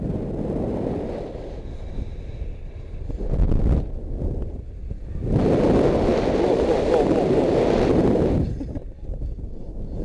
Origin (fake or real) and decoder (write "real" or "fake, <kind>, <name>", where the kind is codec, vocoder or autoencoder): real